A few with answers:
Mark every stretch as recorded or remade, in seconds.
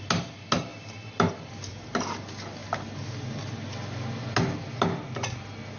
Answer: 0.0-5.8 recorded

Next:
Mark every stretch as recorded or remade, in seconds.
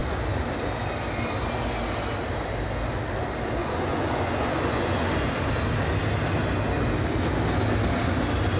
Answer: 0.0-3.6 recorded; 3.6-5.4 remade; 5.4-8.6 recorded